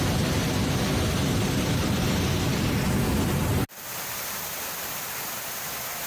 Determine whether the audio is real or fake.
real